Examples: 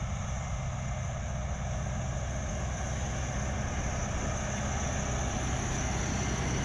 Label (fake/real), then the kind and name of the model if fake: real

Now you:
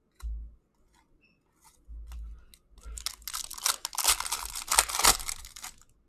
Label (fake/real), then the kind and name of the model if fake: real